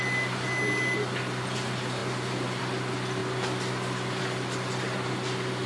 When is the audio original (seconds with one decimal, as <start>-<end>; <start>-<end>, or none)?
0.0-5.7